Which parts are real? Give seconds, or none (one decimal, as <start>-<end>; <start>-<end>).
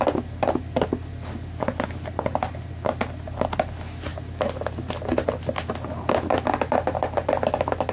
0.0-7.9